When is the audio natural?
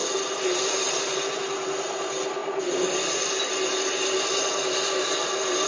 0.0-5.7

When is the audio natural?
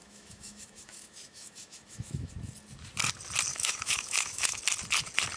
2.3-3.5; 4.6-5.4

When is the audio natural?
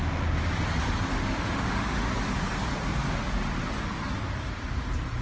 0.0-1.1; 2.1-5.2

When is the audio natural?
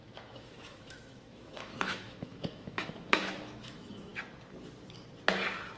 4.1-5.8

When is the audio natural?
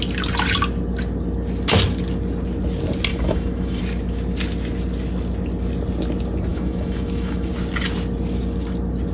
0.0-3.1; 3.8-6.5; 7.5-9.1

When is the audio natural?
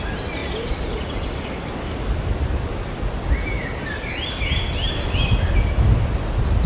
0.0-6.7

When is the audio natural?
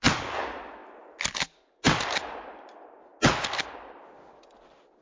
0.0-5.0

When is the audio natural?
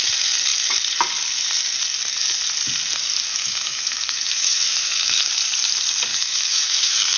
0.0-3.3; 5.3-6.1